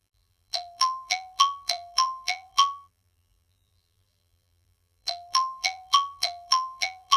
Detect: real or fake fake